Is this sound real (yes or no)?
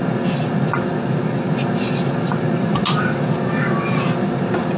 yes